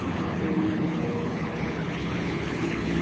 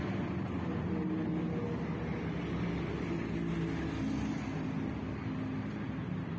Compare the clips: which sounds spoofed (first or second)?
first